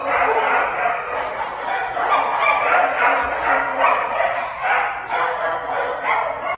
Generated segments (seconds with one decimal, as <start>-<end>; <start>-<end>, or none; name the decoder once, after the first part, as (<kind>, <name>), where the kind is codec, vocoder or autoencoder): 0.0-2.3 (vocoder, BigVGAN v2); 3.3-6.6